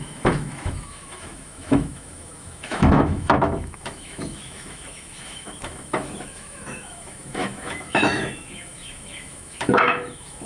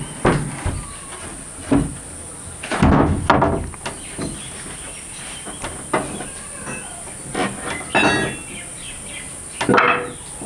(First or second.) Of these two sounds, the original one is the second